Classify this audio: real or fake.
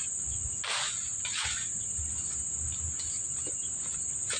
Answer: real